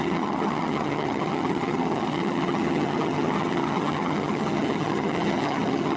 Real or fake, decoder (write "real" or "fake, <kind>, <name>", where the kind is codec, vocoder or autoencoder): fake, vocoder, HiFi-GAN